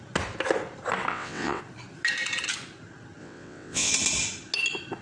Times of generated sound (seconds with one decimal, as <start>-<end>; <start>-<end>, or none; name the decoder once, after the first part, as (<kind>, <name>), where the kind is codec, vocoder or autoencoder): 1.1-1.6 (vocoder, WaveNeXt); 3.2-3.9

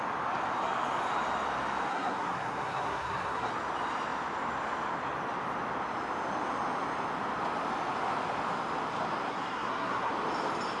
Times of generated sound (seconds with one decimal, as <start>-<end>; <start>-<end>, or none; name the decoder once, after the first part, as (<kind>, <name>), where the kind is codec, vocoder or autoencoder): 1.9-3.5 (codec, SNAC); 9.3-10.1

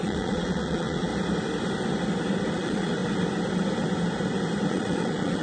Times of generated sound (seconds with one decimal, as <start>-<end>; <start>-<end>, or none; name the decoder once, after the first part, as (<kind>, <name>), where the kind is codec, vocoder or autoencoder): 0.0-1.1 (vocoder, Vocos); 2.5-3.0; 4.7-5.4

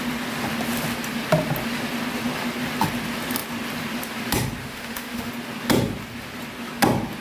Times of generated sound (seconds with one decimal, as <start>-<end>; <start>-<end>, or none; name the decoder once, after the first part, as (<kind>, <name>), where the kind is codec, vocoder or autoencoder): 4.6-5.3 (autoencoder, DAC-VAE)

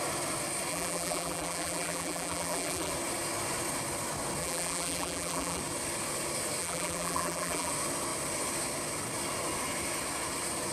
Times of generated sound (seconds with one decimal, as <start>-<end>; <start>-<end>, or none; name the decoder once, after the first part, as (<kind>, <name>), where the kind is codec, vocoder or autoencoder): 0.7-2.9 (vocoder, BigVGAN v2); 4.4-5.6; 6.6-7.7